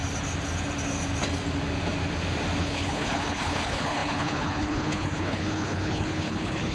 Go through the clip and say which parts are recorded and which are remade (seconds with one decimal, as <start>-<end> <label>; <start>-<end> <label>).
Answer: 0.0-2.6 recorded; 2.6-6.7 remade